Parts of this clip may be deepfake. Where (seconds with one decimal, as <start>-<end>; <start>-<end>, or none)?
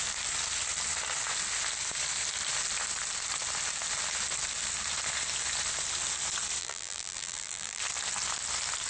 6.6-7.8